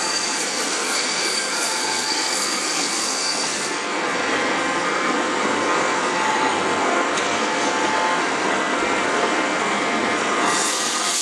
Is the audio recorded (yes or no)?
no